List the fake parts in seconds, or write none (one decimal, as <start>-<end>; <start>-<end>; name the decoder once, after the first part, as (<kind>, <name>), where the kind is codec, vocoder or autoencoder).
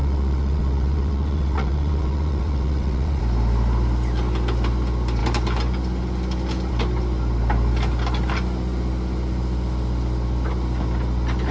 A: 0.0-3.2 (vocoder, WaveNeXt)